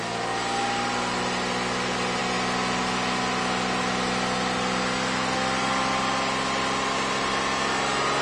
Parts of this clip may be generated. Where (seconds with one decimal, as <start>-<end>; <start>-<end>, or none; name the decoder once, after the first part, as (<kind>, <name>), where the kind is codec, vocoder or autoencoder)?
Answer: none